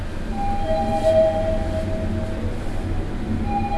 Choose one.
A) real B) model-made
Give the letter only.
A